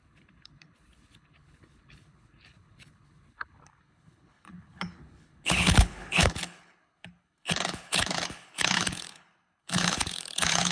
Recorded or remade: remade